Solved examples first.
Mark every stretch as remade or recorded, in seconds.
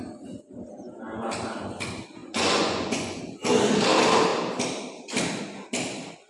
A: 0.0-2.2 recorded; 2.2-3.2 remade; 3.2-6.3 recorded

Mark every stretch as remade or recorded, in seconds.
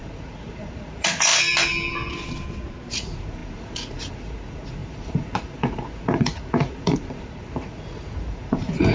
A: 0.0-1.3 remade; 1.3-2.9 recorded; 2.9-8.9 remade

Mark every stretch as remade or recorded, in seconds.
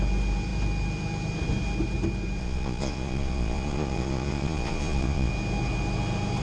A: 0.0-2.4 recorded; 2.4-5.3 remade; 5.3-6.4 recorded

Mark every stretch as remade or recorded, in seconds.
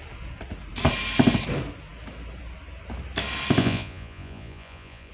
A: 0.0-3.6 recorded; 3.6-5.1 remade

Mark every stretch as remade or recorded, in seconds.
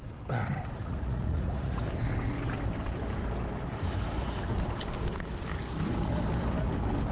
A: 0.0-0.8 recorded; 0.8-1.8 remade; 1.8-7.1 recorded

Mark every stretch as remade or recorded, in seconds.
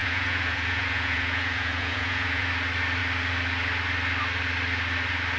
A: 0.0-2.5 remade; 2.5-5.4 recorded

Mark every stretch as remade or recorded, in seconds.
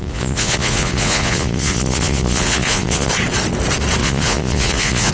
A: 0.0-3.1 remade; 3.1-4.0 recorded; 4.0-5.1 remade